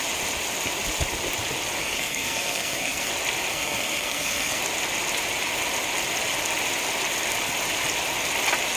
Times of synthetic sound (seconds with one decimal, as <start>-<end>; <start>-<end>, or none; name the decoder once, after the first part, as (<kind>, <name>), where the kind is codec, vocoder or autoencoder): 1.8-3.1 (codec, SNAC); 3.5-4.6